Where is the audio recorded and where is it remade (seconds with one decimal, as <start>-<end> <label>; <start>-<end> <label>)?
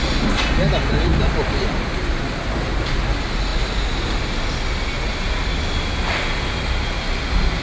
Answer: 0.0-1.1 recorded; 1.1-2.4 remade; 2.4-3.5 recorded; 3.5-4.2 remade; 4.2-7.6 recorded